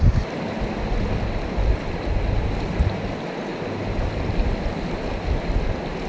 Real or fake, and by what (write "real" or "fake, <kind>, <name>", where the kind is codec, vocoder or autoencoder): real